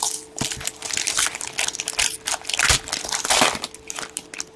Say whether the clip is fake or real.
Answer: real